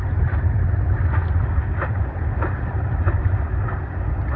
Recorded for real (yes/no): yes